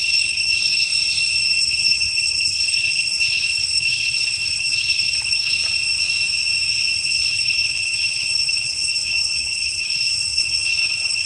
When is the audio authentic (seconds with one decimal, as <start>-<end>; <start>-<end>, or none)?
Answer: 0.9-1.6; 5.6-7.0